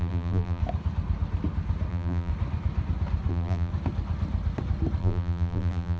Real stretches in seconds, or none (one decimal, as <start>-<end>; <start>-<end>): 0.6-1.9; 2.3-3.3; 3.7-5.0